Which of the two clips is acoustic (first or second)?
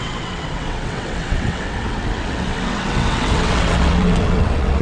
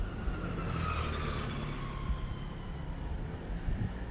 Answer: second